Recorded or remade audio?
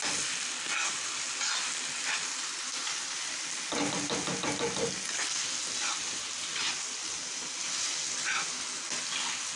recorded